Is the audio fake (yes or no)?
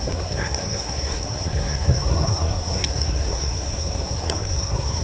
yes